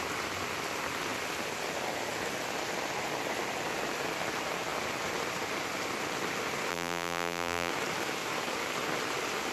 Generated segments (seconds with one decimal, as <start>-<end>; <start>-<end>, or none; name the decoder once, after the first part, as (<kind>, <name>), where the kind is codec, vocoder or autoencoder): 6.7-7.7 (vocoder, BigVGAN v2)